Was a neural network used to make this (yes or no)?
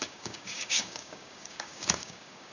yes